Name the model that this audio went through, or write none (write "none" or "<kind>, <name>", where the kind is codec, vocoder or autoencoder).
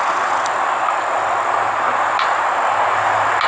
none